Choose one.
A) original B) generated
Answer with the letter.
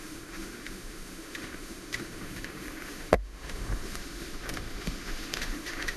B